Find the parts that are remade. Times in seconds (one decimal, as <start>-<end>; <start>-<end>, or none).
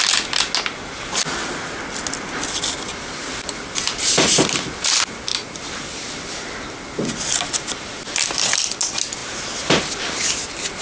5.3-6.1